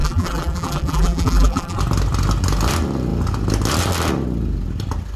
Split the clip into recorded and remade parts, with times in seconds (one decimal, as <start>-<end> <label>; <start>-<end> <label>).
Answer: 0.0-1.8 remade; 1.8-5.2 recorded